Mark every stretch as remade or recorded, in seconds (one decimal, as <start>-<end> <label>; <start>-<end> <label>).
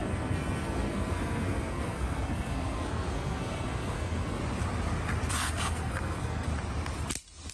0.0-4.4 remade; 4.4-5.3 recorded; 5.3-6.5 remade; 6.5-7.5 recorded